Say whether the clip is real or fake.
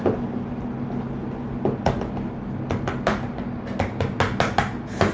real